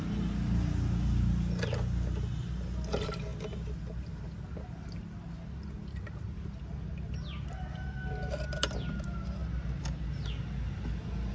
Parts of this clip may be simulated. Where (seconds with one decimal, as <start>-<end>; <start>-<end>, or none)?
none